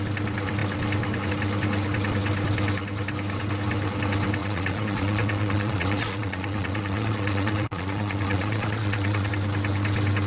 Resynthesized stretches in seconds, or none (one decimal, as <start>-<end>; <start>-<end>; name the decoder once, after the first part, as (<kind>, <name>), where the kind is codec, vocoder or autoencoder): 4.4-9.3 (vocoder, Vocos)